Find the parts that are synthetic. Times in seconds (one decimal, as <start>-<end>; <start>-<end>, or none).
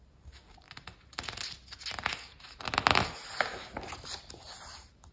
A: none